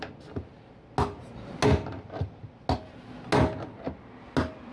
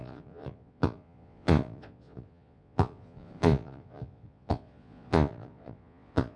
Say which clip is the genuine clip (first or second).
first